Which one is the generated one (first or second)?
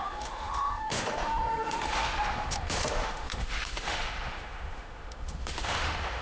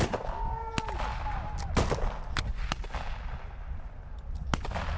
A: first